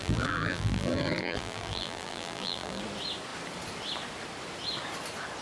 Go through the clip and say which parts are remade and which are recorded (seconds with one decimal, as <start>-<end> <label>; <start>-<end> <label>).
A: 0.0-2.8 remade; 2.8-5.4 recorded